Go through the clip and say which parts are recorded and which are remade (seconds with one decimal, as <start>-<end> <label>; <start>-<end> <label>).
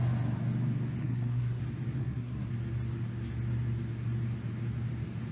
0.0-1.0 recorded; 1.0-1.6 remade; 1.6-2.0 recorded; 2.0-2.5 remade; 2.5-5.3 recorded